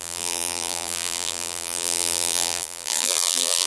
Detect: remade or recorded remade